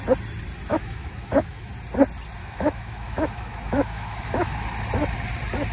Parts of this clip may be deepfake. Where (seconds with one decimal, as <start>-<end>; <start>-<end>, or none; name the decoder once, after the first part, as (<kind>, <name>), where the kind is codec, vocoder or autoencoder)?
0.7-1.7 (autoencoder, DAC-VAE); 2.4-4.5